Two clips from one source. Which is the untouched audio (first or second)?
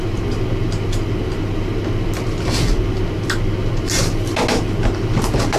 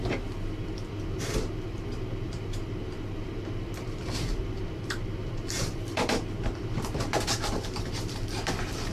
first